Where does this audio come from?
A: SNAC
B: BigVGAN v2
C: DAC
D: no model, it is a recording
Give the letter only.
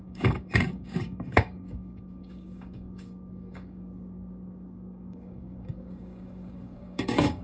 C